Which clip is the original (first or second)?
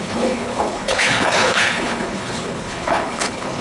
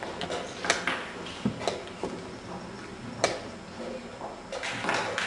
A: second